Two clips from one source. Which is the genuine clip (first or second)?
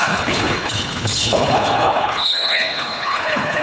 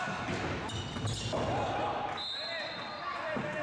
second